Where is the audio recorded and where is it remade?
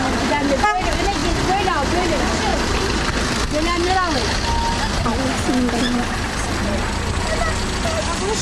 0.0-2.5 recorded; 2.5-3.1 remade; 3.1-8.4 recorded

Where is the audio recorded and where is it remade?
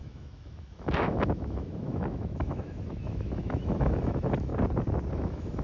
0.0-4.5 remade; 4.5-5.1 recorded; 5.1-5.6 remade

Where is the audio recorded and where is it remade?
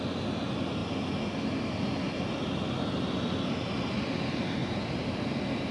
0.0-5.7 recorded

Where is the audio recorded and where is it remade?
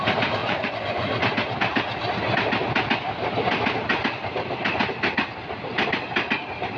0.0-0.4 recorded; 0.4-1.2 remade; 1.2-6.8 recorded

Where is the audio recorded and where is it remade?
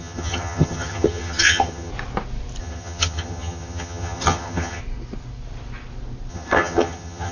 0.0-1.9 remade; 1.9-2.6 recorded; 2.6-4.8 remade; 4.8-6.3 recorded; 6.3-7.3 remade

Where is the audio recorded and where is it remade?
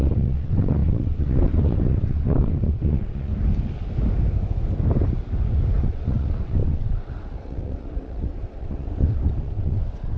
0.0-3.3 remade; 3.3-5.8 recorded; 5.8-10.2 remade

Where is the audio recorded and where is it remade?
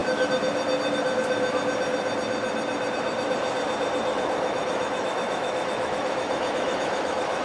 0.0-4.1 recorded; 4.1-7.4 remade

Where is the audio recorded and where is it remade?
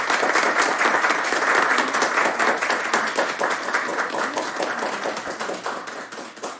0.0-6.6 recorded